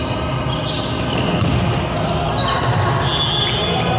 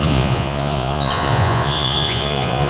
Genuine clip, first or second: first